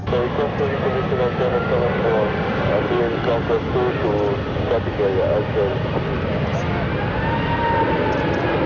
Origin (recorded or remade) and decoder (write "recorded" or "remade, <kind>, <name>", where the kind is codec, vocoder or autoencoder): recorded